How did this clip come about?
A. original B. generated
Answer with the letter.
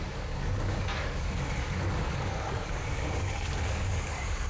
B